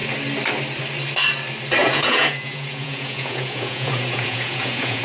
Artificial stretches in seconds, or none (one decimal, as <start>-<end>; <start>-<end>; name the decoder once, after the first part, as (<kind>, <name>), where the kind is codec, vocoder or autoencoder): 1.8-5.0 (vocoder, Vocos)

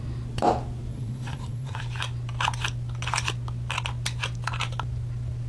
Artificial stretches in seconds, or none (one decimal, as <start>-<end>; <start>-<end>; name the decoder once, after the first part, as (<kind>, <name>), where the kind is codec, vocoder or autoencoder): 0.9-1.8 (vocoder, Vocos)

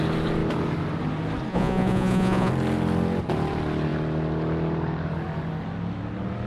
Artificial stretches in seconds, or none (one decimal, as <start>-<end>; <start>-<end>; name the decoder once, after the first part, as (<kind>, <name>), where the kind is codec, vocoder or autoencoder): 1.5-2.5 (vocoder, Vocos)

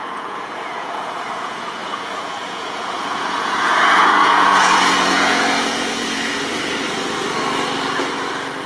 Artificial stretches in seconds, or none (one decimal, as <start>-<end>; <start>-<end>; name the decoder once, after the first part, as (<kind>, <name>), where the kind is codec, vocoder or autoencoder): 0.0-6.5 (vocoder, Vocos)

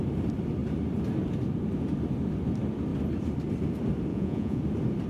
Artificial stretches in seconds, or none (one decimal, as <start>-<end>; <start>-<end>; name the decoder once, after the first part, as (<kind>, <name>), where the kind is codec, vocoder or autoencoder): 4.1-4.6 (vocoder, Vocos)

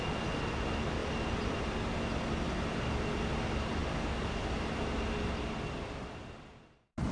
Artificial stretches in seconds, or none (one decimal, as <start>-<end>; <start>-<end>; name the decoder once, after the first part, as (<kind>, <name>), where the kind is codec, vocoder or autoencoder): none

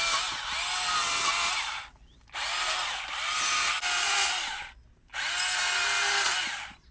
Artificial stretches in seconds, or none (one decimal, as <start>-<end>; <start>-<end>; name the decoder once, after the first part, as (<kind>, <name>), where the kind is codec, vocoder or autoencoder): none

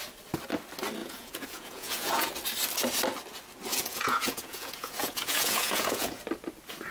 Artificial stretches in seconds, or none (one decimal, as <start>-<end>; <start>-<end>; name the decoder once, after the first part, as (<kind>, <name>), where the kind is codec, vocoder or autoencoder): 1.0-2.3 (vocoder, Vocos); 3.7-6.2